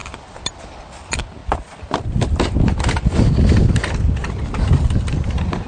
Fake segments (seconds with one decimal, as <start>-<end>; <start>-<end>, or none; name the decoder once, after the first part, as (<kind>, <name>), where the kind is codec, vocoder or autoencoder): none